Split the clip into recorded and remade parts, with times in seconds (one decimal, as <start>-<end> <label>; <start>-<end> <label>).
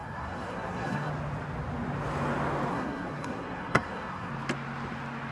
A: 0.0-1.1 remade; 1.1-2.7 recorded; 2.7-4.3 remade; 4.3-5.3 recorded